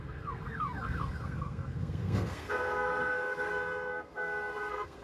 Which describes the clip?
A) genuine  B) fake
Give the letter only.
B